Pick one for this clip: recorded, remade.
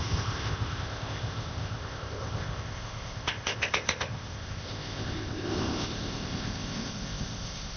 remade